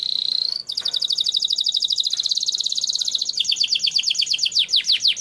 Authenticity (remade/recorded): recorded